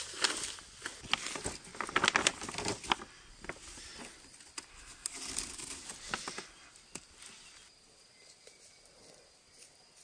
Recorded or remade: recorded